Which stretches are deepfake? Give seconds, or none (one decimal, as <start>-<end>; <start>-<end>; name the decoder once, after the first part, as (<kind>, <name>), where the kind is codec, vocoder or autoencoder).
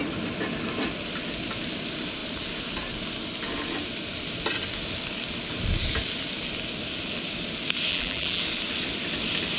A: 7.9-8.4 (vocoder, BigVGAN v2)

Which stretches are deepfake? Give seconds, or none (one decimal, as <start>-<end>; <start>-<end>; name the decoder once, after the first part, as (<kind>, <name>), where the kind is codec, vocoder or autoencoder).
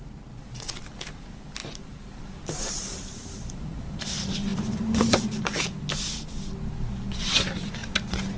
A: 1.6-4.1 (vocoder, BigVGAN v2); 4.5-5.5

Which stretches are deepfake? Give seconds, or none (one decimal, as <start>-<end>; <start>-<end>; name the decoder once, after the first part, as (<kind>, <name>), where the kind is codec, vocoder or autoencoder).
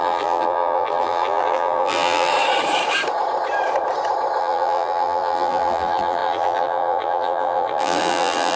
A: 0.0-2.3 (vocoder, BigVGAN v2); 4.4-8.6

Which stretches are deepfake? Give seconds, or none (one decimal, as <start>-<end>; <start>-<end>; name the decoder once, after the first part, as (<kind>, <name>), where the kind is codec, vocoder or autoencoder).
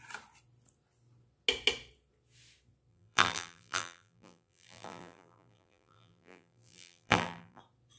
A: 2.9-7.6 (vocoder, BigVGAN v2)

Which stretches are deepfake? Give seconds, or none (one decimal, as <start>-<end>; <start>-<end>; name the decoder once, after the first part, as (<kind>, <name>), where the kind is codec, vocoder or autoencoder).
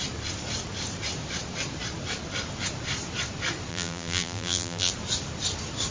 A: 3.7-4.9 (vocoder, BigVGAN v2)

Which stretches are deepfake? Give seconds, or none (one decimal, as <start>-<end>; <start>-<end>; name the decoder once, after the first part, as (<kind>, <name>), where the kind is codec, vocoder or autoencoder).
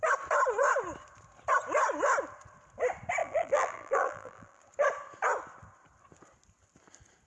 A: 3.2-4.6 (vocoder, BigVGAN v2)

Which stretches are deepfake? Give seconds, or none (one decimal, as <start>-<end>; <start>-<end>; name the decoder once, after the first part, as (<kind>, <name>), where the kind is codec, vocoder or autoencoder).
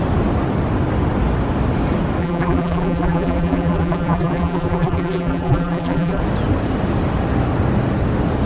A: 2.2-6.2 (vocoder, BigVGAN v2)